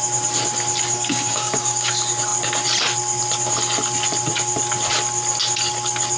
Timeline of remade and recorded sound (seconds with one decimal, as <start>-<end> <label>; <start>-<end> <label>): 0.0-0.9 recorded; 0.9-1.9 remade; 1.9-6.2 recorded